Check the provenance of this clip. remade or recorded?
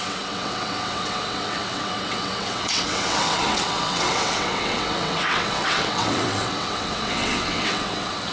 remade